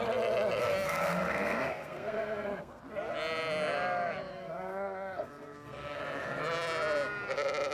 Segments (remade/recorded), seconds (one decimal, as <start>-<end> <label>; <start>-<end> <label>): 0.0-0.6 recorded; 0.6-2.8 remade; 2.8-4.3 recorded; 4.3-6.0 remade; 6.0-7.7 recorded